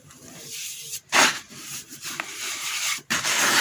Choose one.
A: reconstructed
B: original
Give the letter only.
A